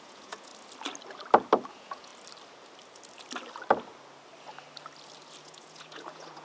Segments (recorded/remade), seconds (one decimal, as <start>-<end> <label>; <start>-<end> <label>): 0.0-0.5 remade; 0.5-1.7 recorded; 1.7-2.1 remade; 2.1-5.4 recorded; 5.4-6.4 remade